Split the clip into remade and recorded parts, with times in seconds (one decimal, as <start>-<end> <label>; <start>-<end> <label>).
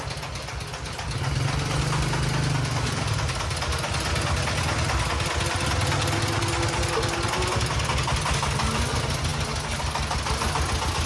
0.0-11.1 recorded